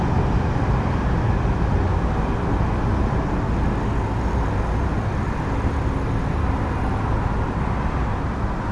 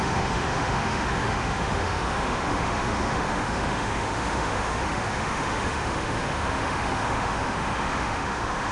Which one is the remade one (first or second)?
second